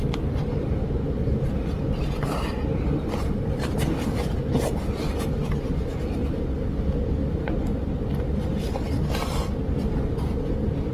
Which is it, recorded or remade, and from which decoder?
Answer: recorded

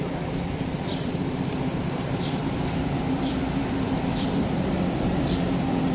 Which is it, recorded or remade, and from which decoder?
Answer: remade, vocoder, BigVGAN v2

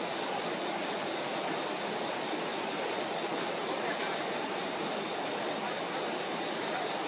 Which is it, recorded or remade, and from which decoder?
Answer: recorded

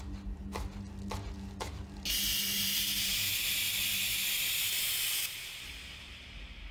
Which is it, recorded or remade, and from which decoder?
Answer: recorded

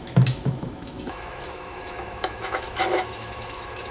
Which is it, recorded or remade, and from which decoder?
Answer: remade, autoencoder, DAC-VAE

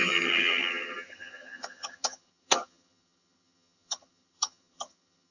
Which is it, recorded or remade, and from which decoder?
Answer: remade, vocoder, HiFi-GAN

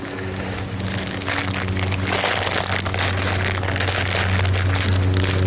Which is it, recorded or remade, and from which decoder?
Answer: recorded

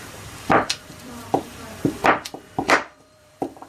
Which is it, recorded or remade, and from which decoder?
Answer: remade, vocoder, BigVGAN v2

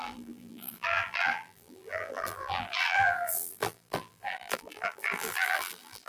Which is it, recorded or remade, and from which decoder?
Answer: remade, vocoder, BigVGAN v2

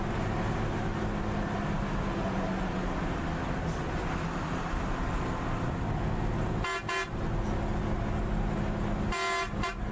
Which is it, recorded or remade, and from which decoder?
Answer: recorded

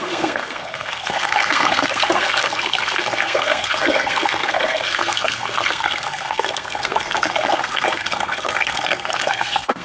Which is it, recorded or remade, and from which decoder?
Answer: remade, codec, SNAC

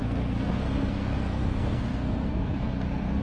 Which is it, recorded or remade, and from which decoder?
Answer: remade, codec, SNAC